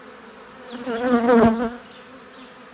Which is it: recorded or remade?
recorded